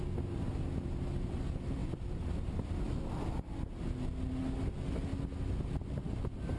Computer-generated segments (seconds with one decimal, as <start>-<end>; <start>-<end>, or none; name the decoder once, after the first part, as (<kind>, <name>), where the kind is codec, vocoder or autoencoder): none